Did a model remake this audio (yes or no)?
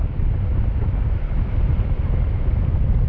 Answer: no